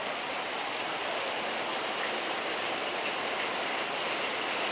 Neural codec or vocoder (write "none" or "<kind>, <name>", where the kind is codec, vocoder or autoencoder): none